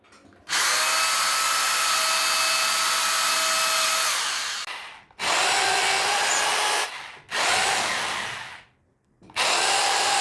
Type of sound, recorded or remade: recorded